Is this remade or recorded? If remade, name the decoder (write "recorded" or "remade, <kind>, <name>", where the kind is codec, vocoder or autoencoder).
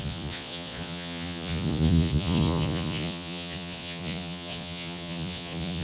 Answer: remade, vocoder, Vocos